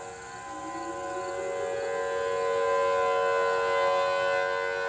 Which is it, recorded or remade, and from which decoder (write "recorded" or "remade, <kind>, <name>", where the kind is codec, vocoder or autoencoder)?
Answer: recorded